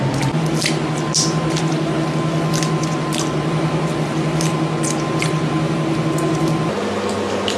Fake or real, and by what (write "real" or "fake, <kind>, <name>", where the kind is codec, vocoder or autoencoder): real